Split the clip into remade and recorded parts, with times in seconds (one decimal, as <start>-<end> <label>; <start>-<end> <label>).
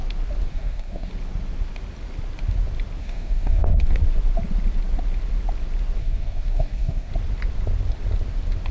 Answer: 0.0-0.5 recorded; 0.5-1.1 remade; 1.1-3.0 recorded; 3.0-3.8 remade; 3.8-6.0 recorded; 6.0-7.1 remade; 7.1-8.7 recorded